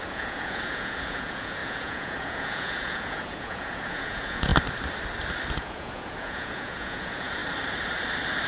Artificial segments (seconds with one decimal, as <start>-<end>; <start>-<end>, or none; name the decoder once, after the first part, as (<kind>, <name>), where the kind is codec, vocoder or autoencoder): 0.0-4.5 (vocoder, Vocos); 5.5-7.4